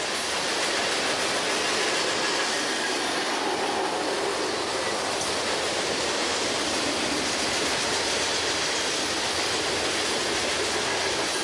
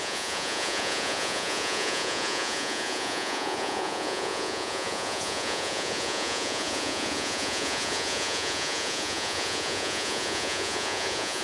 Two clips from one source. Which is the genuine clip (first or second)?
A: first